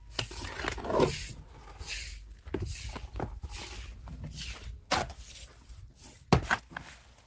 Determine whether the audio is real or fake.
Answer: real